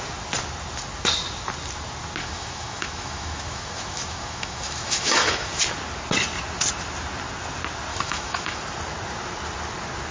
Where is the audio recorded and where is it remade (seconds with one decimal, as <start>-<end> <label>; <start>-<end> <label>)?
0.0-2.2 recorded; 2.2-5.6 remade; 5.6-7.9 recorded; 7.9-8.6 remade; 8.6-10.1 recorded